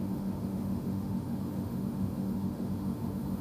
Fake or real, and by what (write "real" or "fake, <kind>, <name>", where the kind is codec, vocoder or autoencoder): fake, autoencoder, DAC-VAE